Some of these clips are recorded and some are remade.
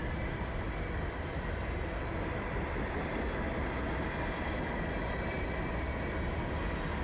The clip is recorded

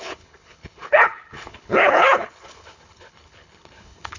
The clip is remade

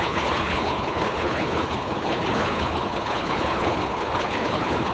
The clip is remade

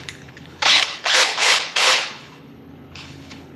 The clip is remade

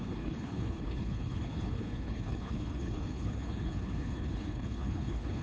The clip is remade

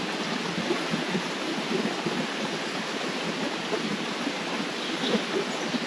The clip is recorded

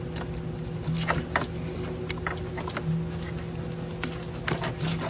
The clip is recorded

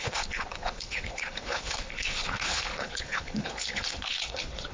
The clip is remade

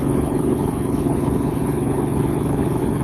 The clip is remade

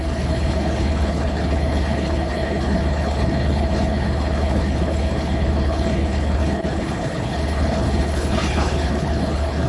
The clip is remade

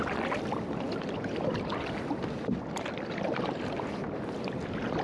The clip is recorded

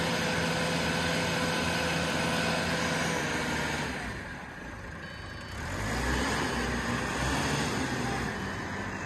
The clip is recorded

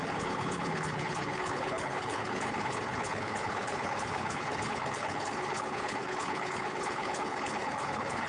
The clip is remade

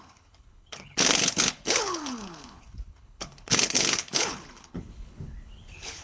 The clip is remade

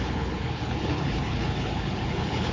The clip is remade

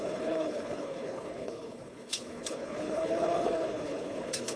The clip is remade